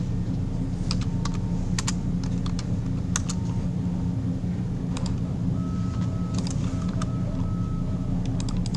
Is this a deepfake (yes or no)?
no